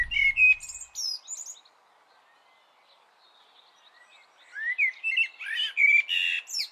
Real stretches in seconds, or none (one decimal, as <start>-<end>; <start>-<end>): 0.0-6.7